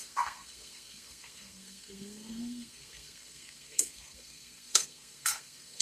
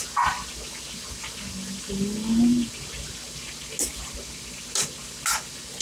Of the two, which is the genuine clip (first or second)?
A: second